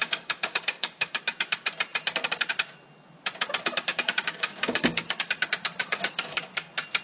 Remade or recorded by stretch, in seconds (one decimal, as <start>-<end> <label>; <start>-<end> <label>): 0.0-1.2 remade; 1.2-3.9 recorded; 3.9-5.3 remade; 5.3-5.8 recorded; 5.8-6.4 remade; 6.4-7.0 recorded